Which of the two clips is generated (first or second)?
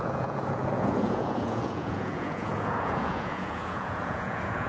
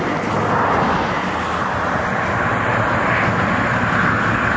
first